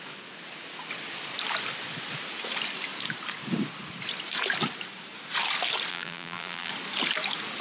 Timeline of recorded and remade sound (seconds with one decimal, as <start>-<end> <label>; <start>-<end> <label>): 0.0-5.9 recorded; 5.9-6.7 remade; 6.7-7.6 recorded